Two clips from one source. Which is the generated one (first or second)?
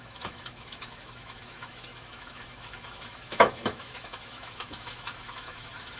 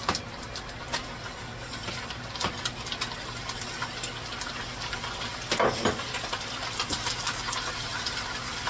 first